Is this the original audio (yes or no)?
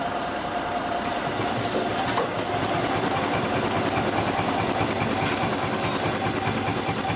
yes